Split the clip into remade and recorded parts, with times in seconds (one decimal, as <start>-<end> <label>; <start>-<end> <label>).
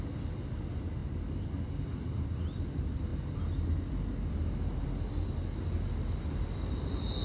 0.0-7.2 recorded